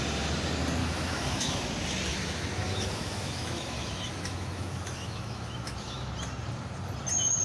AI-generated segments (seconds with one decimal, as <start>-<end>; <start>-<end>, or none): 0.8-1.6; 2.1-6.1